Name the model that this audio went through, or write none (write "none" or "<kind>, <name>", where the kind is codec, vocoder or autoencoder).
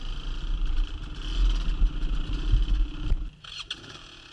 none